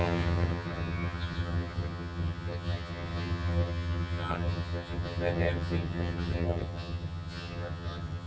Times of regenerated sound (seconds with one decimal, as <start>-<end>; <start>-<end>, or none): 0.0-8.3